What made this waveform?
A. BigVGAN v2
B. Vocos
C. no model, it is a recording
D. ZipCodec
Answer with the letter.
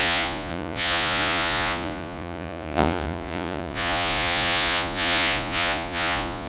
B